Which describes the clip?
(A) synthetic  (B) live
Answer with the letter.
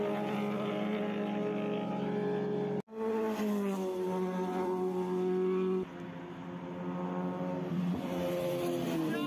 B